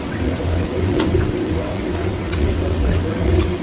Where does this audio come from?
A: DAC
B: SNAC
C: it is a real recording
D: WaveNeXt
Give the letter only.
D